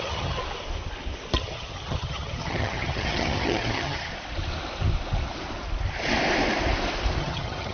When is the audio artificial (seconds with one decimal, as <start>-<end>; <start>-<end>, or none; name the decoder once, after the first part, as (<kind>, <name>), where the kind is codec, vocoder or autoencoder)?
0.0-0.4 (vocoder, HiFi-GAN); 1.4-4.1; 7.2-7.7